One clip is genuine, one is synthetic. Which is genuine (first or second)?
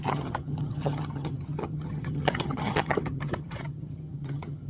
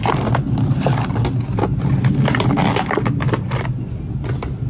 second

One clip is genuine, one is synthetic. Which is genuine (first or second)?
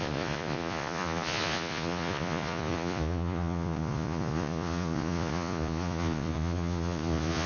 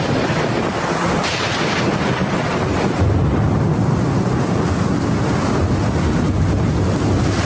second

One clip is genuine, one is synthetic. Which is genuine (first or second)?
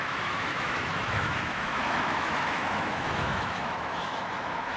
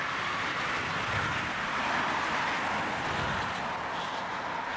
second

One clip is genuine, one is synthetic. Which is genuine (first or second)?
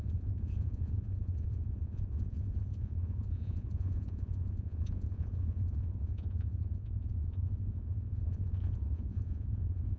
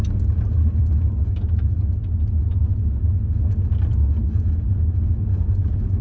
second